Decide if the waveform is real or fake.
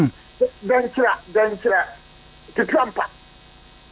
real